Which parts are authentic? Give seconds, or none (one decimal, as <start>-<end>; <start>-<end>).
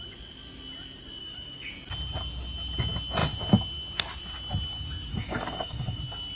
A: 0.0-1.2; 1.7-5.1; 6.0-6.4